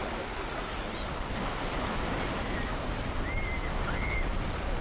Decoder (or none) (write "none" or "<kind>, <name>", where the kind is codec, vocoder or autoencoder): none